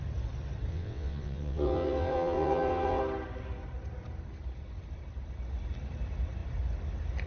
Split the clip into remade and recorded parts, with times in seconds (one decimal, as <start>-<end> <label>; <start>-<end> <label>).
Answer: 0.0-0.7 recorded; 0.7-3.0 remade; 3.0-7.3 recorded